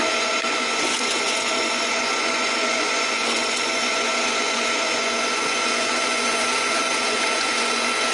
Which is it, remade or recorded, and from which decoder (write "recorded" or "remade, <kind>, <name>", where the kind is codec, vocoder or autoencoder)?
remade, vocoder, Vocos